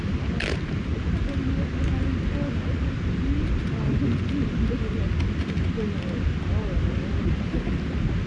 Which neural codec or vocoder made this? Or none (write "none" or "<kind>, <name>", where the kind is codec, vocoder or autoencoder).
none